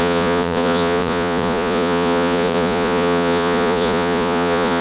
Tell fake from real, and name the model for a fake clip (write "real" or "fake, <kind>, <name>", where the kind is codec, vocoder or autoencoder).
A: fake, vocoder, Vocos